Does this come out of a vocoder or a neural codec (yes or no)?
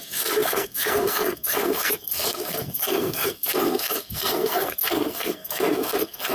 yes